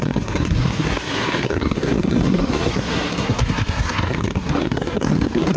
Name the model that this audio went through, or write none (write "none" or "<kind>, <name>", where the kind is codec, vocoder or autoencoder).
codec, SNAC